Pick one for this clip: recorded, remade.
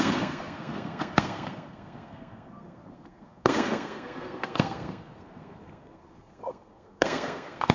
remade